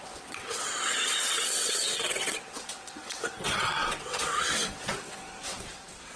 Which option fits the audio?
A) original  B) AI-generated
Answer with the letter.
B